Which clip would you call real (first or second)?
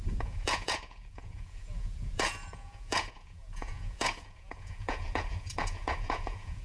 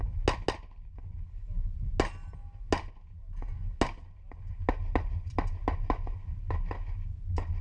second